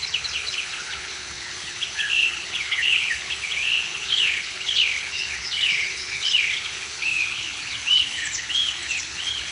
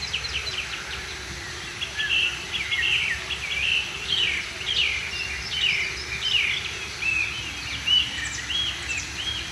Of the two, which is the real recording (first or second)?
second